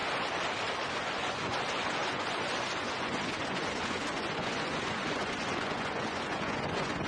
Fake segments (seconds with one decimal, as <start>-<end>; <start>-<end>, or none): 0.9-7.1